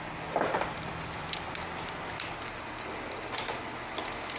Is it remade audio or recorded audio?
recorded